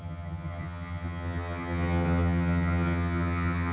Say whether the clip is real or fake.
fake